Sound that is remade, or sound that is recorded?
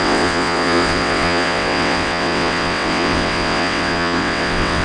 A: remade